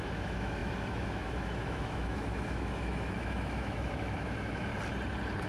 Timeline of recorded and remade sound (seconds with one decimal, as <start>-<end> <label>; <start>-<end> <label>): 0.0-4.7 remade; 4.7-5.5 recorded

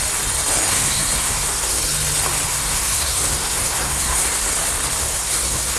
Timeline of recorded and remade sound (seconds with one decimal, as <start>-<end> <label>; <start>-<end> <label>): 0.0-0.7 recorded; 0.7-1.8 remade; 1.8-2.5 recorded; 2.5-4.5 remade; 4.5-5.0 recorded; 5.0-5.8 remade

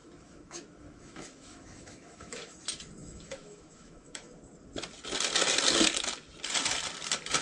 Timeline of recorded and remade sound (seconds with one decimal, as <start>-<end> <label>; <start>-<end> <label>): 0.0-2.6 remade; 2.6-3.0 recorded; 3.0-4.3 remade; 4.3-7.4 recorded

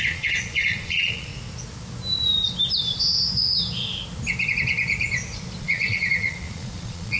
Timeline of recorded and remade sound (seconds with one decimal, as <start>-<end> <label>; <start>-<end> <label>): 0.0-1.3 remade; 1.3-5.6 recorded; 5.6-7.2 remade